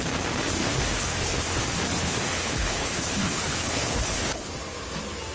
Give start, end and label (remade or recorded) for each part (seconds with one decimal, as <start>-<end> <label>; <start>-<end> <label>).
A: 0.0-0.6 recorded; 0.6-1.6 remade; 1.6-2.0 recorded; 2.0-4.5 remade; 4.5-5.3 recorded